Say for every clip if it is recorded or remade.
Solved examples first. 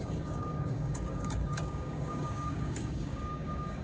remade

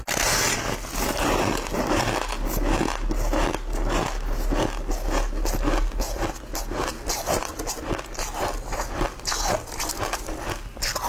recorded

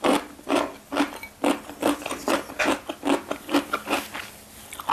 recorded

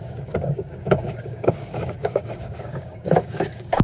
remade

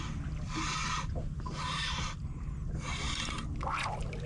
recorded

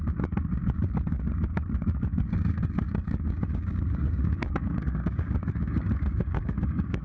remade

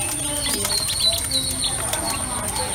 recorded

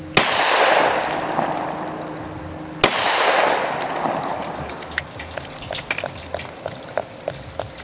recorded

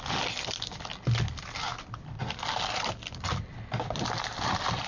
recorded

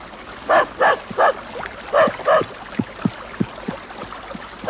recorded